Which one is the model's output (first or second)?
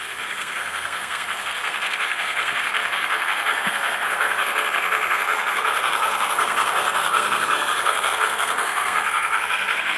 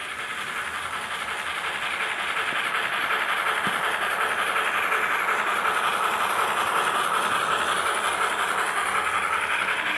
first